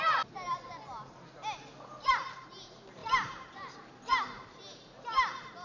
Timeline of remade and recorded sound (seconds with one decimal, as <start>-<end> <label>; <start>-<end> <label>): 0.0-3.0 recorded; 3.0-4.1 remade; 4.1-5.6 recorded